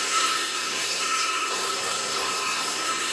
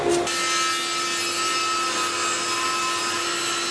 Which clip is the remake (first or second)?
first